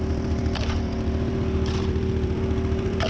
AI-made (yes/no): yes